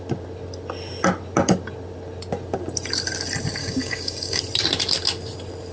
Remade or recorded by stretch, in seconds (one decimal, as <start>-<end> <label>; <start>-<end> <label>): 0.0-3.6 recorded; 3.6-4.4 remade; 4.4-5.7 recorded